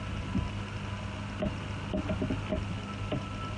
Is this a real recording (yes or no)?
yes